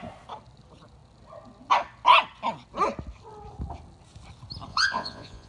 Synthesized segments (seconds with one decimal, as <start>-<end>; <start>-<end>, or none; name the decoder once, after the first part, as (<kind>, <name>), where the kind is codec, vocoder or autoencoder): 4.7-5.5 (vocoder, Vocos)